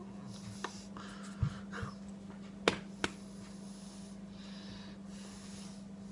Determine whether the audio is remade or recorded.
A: recorded